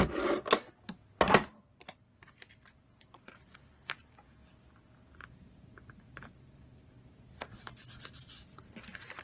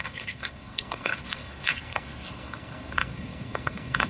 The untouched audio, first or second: first